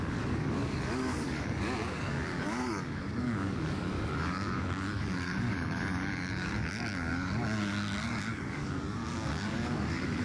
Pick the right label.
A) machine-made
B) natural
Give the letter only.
A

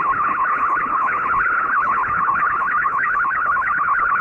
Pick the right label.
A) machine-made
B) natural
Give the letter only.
A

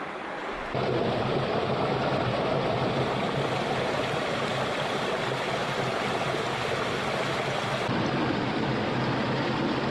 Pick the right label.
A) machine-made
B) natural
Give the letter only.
B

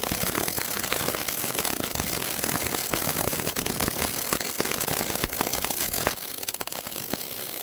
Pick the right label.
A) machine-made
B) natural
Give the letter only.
A